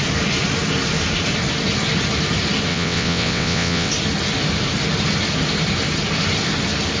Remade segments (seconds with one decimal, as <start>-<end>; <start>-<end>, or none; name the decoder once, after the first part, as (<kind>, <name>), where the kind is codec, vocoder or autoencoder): 2.7-3.9 (vocoder, WaveNeXt)